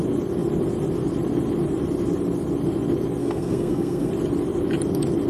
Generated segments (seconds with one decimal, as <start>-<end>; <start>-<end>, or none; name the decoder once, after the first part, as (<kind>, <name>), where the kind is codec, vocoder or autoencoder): 3.2-4.1 (codec, SNAC)